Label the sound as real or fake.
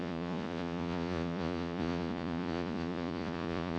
fake